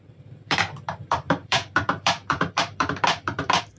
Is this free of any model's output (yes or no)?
no